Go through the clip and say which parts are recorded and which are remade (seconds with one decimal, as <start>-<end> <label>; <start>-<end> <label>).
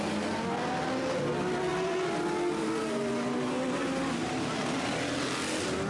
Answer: 0.0-5.9 recorded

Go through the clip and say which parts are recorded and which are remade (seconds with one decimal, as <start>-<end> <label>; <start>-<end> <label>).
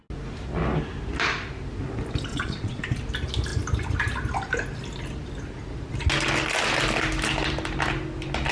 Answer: 0.0-2.3 recorded; 2.3-2.8 remade; 2.8-8.5 recorded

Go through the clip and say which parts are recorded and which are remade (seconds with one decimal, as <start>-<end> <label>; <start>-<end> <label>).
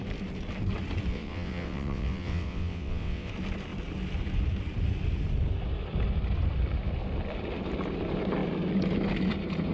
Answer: 0.0-1.1 recorded; 1.1-3.3 remade; 3.3-9.7 recorded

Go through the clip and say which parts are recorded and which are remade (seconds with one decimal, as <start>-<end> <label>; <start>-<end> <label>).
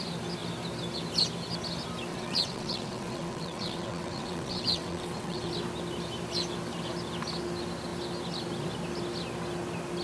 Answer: 0.0-2.1 recorded; 2.1-5.5 remade; 5.5-10.0 recorded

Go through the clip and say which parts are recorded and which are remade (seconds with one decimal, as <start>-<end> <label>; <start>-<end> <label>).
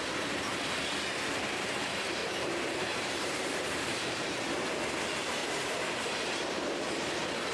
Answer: 0.0-2.2 recorded; 2.2-4.2 remade; 4.2-5.4 recorded; 5.4-6.8 remade; 6.8-7.5 recorded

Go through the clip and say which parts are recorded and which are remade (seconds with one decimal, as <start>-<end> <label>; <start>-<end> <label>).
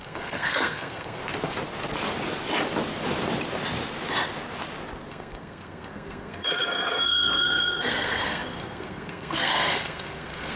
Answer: 0.0-1.2 remade; 1.2-5.1 recorded; 5.1-10.6 remade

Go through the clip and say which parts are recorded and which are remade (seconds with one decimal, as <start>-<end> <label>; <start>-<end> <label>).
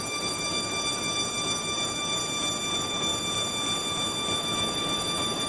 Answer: 0.0-2.2 remade; 2.2-2.7 recorded; 2.7-3.1 remade; 3.1-4.4 recorded; 4.4-5.5 remade